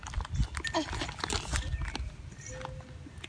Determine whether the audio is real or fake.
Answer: real